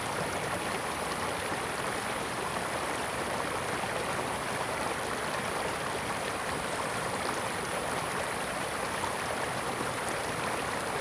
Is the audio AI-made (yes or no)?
yes